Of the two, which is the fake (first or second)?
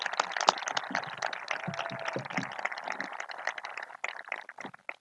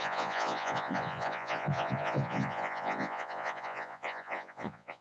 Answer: second